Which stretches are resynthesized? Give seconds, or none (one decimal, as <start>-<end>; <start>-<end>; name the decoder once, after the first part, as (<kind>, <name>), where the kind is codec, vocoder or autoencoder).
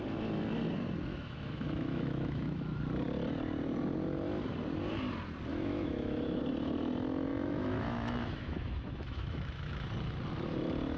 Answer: 1.1-2.8 (autoencoder, DAC-VAE); 5.5-6.4; 7.3-9.8